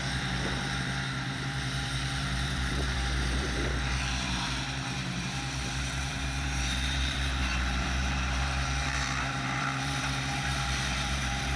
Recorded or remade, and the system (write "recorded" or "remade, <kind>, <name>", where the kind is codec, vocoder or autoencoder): remade, vocoder, BigVGAN v2